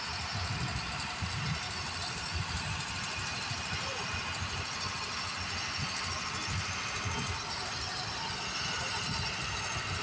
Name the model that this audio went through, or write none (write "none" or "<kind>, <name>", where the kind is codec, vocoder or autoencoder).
none